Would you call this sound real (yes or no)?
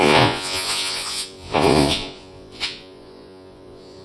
no